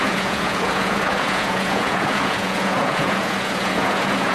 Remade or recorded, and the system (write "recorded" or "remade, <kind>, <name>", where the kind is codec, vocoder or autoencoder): remade, vocoder, Vocos